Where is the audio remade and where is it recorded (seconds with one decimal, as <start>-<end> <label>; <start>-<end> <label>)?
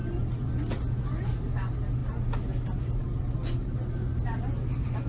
0.0-5.1 recorded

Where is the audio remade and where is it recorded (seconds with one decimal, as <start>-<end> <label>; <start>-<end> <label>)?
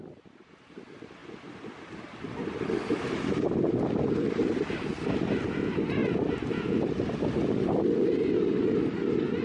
0.0-6.0 remade; 6.0-7.7 recorded; 7.7-9.4 remade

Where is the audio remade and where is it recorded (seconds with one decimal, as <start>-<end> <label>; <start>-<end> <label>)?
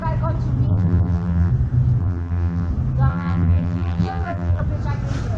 0.0-0.7 recorded; 0.7-1.5 remade; 1.5-2.0 recorded; 2.0-2.7 remade; 2.7-3.1 recorded; 3.1-4.6 remade; 4.6-5.4 recorded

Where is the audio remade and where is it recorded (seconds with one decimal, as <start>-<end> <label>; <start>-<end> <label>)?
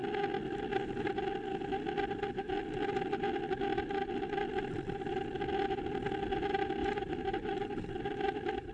0.0-6.8 recorded; 6.8-7.9 remade; 7.9-8.7 recorded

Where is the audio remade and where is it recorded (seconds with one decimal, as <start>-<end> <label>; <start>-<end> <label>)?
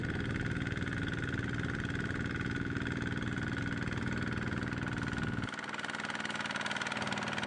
0.0-7.5 recorded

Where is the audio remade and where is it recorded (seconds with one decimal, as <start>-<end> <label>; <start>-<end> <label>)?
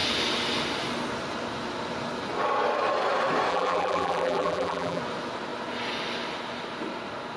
0.0-3.5 recorded; 3.5-5.0 remade; 5.0-7.4 recorded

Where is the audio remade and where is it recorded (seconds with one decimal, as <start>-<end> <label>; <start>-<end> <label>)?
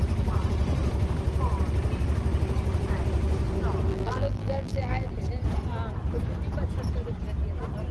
0.0-3.9 recorded; 3.9-5.1 remade; 5.1-7.9 recorded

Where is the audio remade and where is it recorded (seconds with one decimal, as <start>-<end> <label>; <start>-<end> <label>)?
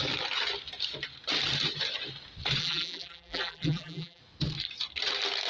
0.0-2.6 recorded; 2.6-4.2 remade; 4.2-5.5 recorded